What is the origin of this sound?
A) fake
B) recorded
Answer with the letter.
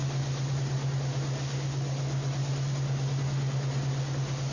B